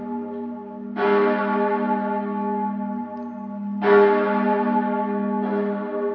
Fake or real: real